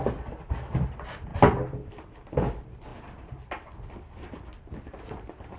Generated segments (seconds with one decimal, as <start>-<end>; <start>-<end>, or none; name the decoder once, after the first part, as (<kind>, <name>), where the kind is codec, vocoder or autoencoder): 1.3-1.9 (vocoder, BigVGAN v2)